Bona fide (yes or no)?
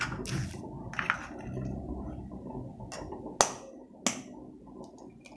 yes